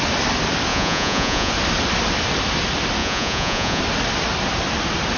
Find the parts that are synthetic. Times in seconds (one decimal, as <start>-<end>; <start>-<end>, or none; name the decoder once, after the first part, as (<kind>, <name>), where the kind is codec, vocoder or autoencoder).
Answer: 0.7-1.5 (vocoder, Vocos); 3.0-3.8